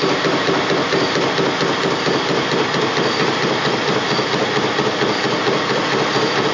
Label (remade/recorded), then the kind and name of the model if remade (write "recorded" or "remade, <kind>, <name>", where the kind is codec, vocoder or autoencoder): recorded